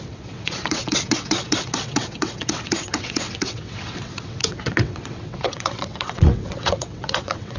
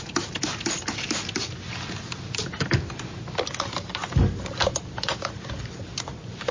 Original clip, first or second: second